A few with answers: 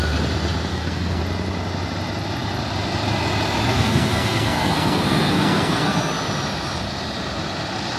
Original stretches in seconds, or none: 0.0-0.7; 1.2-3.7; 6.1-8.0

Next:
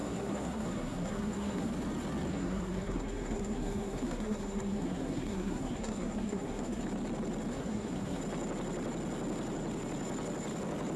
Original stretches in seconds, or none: 1.7-2.3; 6.8-7.5; 8.2-11.0

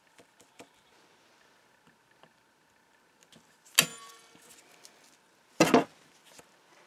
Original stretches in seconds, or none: 0.0-6.9